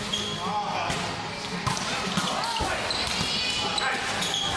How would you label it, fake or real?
real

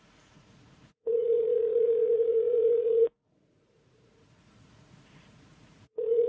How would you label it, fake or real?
fake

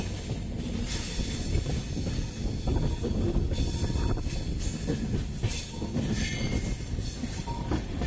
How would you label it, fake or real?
real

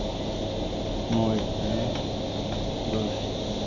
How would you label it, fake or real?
real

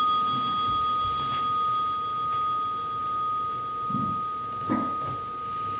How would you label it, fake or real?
real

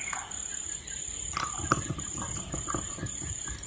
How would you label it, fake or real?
real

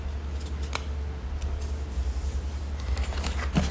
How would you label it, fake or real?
real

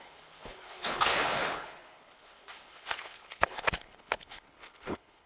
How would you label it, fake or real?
fake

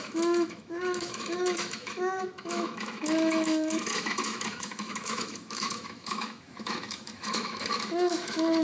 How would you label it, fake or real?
fake